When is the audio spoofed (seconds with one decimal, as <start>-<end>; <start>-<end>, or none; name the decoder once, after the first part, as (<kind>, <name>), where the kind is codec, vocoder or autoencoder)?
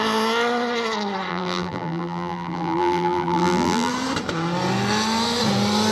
1.3-3.9 (vocoder, BigVGAN v2)